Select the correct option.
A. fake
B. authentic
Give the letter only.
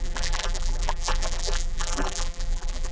A